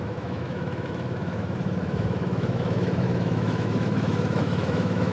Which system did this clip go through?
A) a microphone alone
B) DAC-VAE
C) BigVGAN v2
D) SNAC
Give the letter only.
B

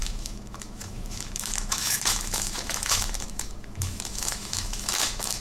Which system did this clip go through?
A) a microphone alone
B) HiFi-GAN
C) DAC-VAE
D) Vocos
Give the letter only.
C